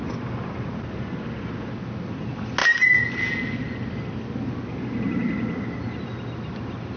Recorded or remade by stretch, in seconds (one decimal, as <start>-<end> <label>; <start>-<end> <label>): 0.0-7.0 recorded